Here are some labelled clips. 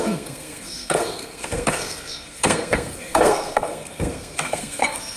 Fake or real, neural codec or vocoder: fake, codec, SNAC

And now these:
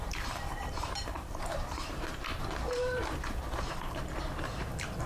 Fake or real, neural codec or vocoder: fake, vocoder, BigVGAN v2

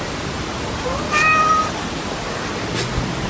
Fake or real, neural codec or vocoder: real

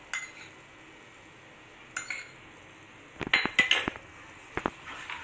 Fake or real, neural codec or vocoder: real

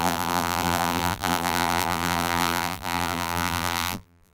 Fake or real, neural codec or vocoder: fake, vocoder, BigVGAN v2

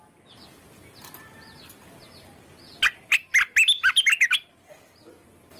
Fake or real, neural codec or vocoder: real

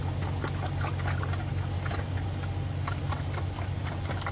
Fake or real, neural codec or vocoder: real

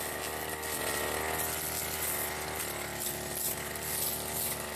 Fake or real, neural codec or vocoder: real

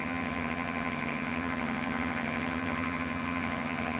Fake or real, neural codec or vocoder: fake, vocoder, HiFi-GAN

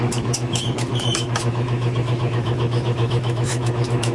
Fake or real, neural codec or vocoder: fake, autoencoder, DAC-VAE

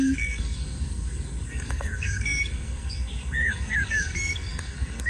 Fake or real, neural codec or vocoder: fake, codec, SNAC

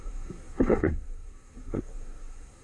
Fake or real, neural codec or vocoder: fake, codec, SNAC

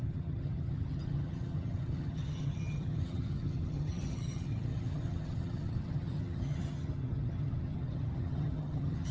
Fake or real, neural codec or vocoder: fake, vocoder, HiFi-GAN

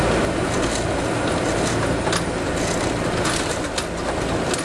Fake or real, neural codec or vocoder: real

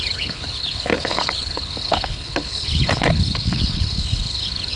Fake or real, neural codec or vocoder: fake, codec, HILCodec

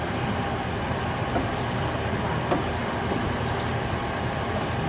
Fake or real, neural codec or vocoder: real